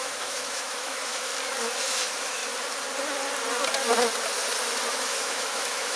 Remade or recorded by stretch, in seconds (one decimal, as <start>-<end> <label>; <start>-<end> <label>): 0.0-1.3 remade; 1.3-1.8 recorded; 1.8-2.4 remade; 2.4-4.9 recorded; 4.9-6.0 remade